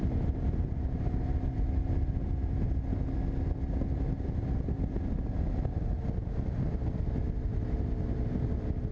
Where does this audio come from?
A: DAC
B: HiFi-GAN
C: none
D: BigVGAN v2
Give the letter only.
C